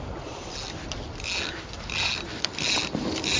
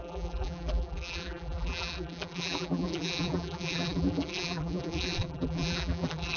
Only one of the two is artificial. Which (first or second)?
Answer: second